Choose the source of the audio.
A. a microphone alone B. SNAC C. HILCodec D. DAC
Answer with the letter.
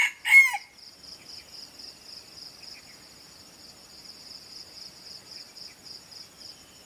A